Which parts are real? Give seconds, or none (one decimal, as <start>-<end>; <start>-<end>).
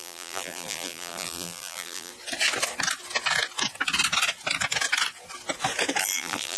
2.1-6.0